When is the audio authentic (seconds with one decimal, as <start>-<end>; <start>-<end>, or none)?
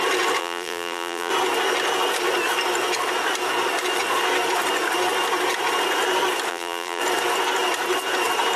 0.0-0.4; 1.3-6.5; 7.0-8.6